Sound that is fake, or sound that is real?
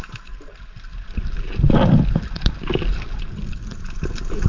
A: real